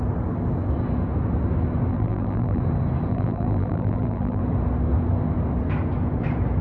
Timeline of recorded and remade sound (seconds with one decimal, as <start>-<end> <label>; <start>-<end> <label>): 0.0-1.9 recorded; 1.9-2.6 remade; 2.6-3.1 recorded; 3.1-4.4 remade; 4.4-6.6 recorded